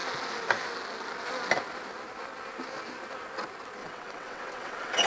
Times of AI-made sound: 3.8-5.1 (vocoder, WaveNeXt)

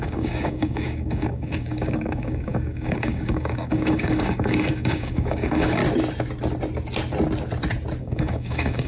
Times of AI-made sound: 0.0-5.8 (codec, DAC); 8.0-8.9